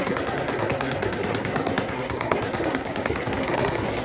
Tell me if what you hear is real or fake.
fake